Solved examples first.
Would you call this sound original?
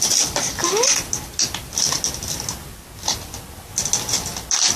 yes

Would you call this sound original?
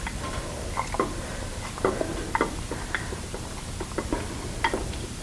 no